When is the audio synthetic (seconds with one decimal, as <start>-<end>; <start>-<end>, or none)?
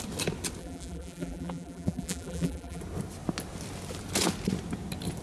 0.6-2.8